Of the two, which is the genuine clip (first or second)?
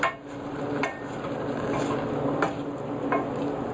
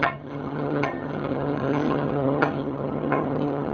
first